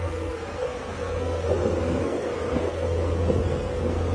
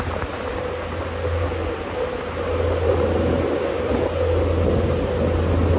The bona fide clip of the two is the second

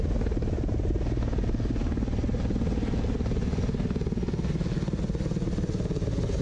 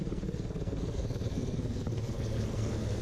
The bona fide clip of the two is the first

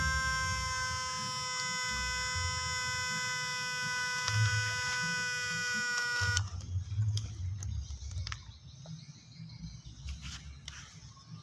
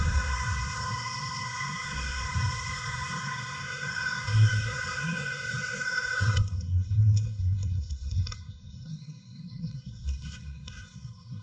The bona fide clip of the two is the first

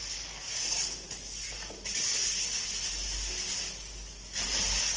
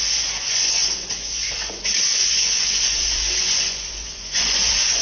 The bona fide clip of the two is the first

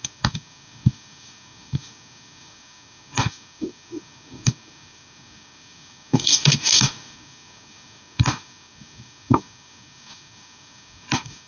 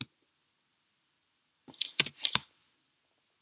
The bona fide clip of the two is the second